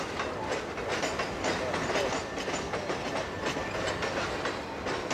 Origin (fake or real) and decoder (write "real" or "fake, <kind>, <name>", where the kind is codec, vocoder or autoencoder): real